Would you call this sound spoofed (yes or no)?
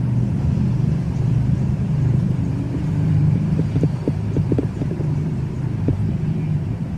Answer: yes